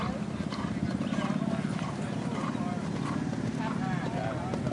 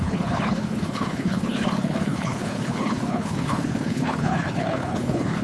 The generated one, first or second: second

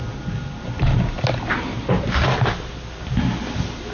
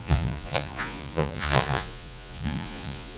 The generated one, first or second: second